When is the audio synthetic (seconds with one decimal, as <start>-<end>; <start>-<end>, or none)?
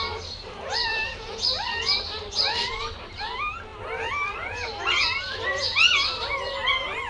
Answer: none